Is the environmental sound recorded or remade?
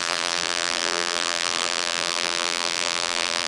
remade